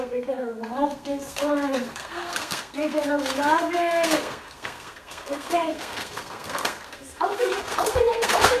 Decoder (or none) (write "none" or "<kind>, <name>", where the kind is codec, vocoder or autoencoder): codec, SNAC